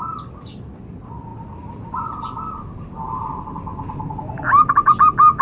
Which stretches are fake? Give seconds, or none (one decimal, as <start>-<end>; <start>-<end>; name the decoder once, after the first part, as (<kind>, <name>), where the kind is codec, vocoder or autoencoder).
none